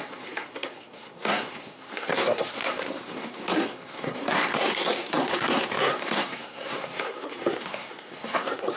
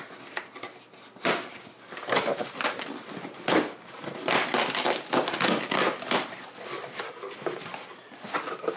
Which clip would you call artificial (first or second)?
first